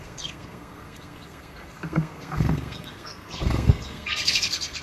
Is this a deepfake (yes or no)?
yes